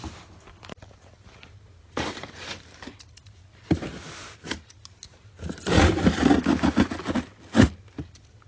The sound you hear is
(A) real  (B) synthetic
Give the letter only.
A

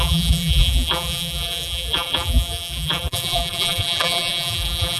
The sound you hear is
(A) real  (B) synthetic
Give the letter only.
B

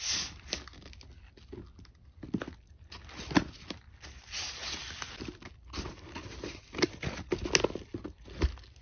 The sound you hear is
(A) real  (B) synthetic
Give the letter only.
A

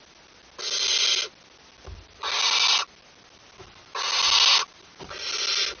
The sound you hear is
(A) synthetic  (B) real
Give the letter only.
B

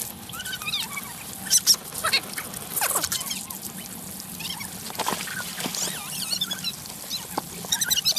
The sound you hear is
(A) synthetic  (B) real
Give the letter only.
B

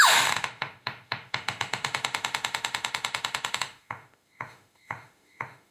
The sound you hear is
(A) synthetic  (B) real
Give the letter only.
A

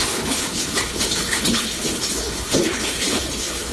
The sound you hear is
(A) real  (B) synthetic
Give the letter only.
B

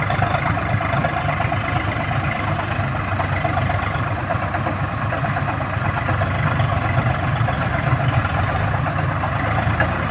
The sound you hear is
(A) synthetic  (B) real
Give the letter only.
B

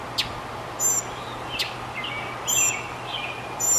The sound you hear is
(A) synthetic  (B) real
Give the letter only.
B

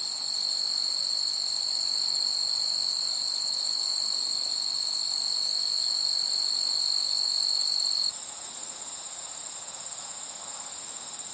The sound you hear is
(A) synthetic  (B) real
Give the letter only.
A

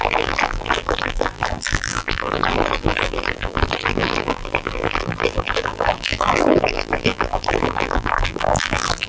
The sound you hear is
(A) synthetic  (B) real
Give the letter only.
A